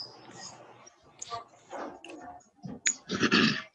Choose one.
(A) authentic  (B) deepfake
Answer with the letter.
A